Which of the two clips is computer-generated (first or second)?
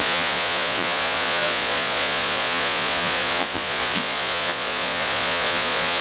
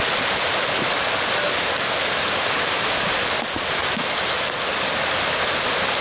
first